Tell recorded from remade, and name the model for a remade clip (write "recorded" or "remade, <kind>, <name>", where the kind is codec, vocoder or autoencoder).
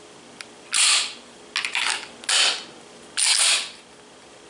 recorded